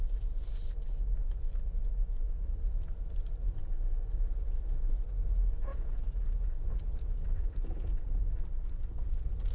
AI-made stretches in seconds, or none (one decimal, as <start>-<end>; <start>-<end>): 5.7-7.9